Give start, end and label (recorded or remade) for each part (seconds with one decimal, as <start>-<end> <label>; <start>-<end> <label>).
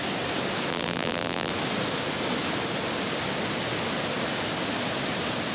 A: 0.0-0.7 recorded; 0.7-1.5 remade; 1.5-5.5 recorded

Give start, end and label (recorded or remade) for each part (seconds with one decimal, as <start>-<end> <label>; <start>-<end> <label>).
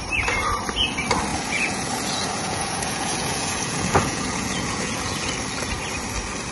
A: 0.0-1.3 recorded; 1.3-5.2 remade; 5.2-6.5 recorded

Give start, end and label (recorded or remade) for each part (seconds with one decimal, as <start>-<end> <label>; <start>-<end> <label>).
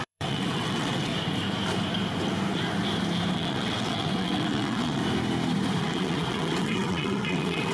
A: 0.0-1.1 remade; 1.1-3.3 recorded; 3.3-5.0 remade; 5.0-5.8 recorded; 5.8-7.7 remade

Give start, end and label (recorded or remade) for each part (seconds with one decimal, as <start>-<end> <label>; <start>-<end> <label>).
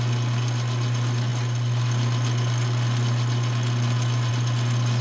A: 0.0-5.0 recorded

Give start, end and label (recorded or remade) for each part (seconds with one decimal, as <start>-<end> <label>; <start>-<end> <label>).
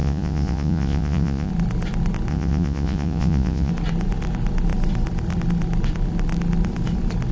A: 0.0-1.5 remade; 1.5-2.3 recorded; 2.3-3.7 remade; 3.7-7.3 recorded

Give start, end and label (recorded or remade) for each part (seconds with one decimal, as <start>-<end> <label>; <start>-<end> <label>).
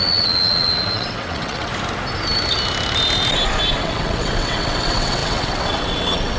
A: 0.0-1.7 remade; 1.7-3.8 recorded; 3.8-6.4 remade